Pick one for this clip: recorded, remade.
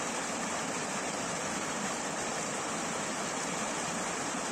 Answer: remade